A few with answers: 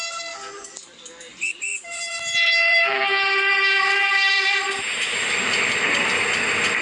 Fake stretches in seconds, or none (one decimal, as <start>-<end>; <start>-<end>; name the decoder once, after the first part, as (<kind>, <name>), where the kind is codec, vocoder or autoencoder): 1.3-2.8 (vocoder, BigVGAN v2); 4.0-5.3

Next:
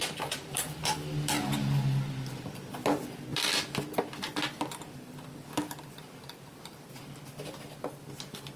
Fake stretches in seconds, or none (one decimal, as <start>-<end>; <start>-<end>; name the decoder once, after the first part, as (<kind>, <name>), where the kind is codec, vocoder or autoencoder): 0.0-0.8 (vocoder, BigVGAN v2)

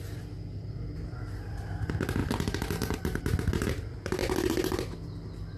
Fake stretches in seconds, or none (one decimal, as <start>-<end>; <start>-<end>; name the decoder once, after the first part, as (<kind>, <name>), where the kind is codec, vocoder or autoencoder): 2.2-3.2 (vocoder, BigVGAN v2)